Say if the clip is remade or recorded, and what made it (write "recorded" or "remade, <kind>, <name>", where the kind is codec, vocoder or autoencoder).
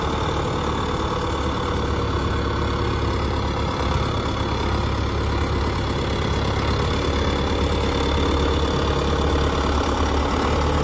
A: recorded